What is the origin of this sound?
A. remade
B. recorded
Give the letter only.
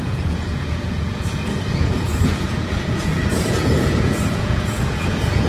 A